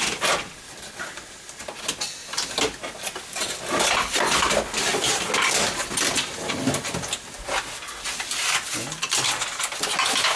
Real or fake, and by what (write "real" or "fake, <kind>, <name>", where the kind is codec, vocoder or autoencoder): real